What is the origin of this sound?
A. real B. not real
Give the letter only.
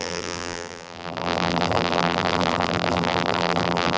B